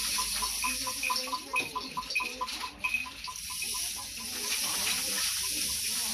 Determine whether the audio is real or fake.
real